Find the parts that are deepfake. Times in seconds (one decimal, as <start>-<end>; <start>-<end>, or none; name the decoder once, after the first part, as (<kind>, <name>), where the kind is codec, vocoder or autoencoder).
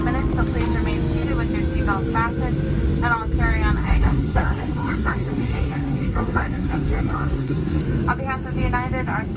3.8-7.8 (codec, SNAC)